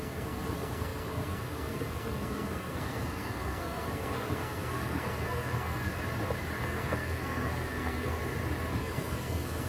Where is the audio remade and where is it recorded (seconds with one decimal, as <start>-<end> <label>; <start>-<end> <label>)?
0.0-5.9 remade; 5.9-6.6 recorded; 6.6-8.2 remade; 8.2-8.8 recorded; 8.8-9.7 remade